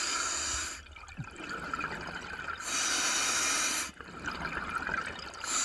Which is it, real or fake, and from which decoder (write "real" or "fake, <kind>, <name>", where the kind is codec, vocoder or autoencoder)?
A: real